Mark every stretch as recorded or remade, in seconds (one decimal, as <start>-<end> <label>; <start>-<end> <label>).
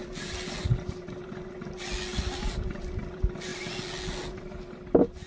0.0-2.1 recorded; 2.1-3.0 remade; 3.0-5.3 recorded